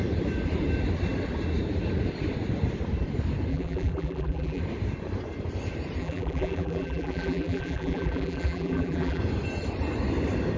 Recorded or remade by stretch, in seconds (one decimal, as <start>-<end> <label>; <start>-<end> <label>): 0.0-3.5 recorded; 3.5-4.6 remade; 4.6-6.0 recorded; 6.0-9.2 remade; 9.2-10.6 recorded